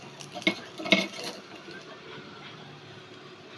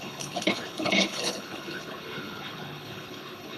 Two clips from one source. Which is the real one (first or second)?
first